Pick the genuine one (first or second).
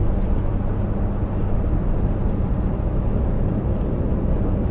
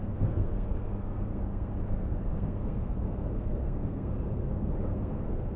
first